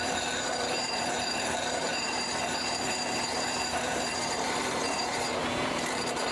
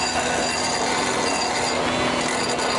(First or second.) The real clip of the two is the second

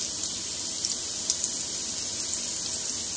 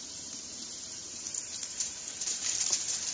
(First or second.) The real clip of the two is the first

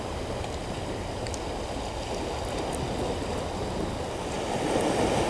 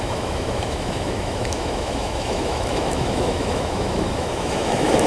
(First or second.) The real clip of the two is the first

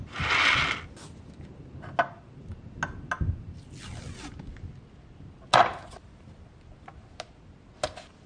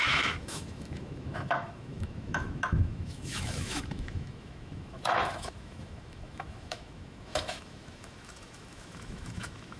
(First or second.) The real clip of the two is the first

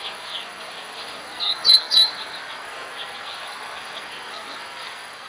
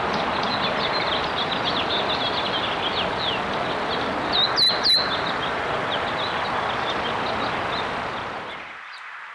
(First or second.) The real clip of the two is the second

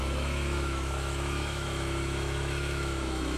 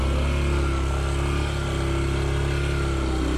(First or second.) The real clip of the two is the second